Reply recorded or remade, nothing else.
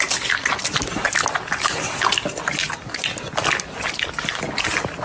recorded